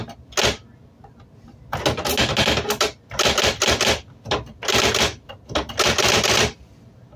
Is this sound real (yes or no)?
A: yes